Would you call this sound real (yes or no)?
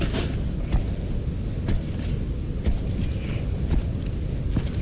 yes